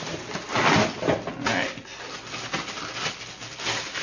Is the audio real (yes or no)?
yes